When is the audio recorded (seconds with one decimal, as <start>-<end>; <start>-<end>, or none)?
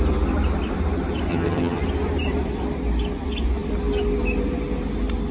0.0-1.3; 1.8-5.3